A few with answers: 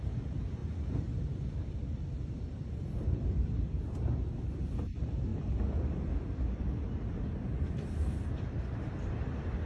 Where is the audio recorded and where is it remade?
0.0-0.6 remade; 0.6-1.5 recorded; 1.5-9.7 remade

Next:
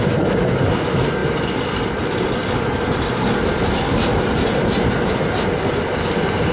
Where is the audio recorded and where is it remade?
0.0-6.5 recorded

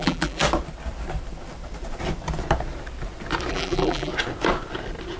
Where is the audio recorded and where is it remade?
0.0-0.4 remade; 0.4-3.5 recorded; 3.5-4.1 remade; 4.1-5.2 recorded

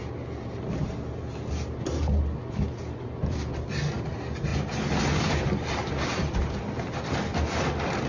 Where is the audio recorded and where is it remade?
0.0-4.5 recorded; 4.5-6.6 remade; 6.6-7.3 recorded; 7.3-8.1 remade

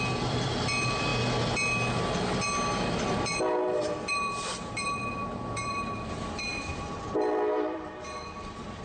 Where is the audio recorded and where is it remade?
0.0-1.1 remade; 1.1-4.1 recorded; 4.1-8.8 remade